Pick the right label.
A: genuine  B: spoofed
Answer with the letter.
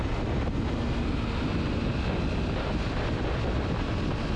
A